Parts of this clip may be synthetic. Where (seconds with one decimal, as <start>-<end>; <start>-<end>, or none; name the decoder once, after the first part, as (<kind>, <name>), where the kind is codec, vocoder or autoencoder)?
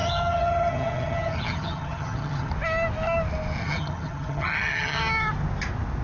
0.0-2.5 (vocoder, HiFi-GAN); 3.6-5.0